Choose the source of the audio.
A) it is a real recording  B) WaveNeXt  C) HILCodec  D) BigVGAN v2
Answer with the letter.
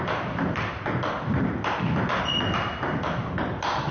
A